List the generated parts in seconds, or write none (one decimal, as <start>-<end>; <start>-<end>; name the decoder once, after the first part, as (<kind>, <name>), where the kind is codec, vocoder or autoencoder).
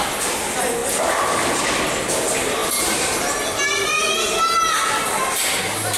none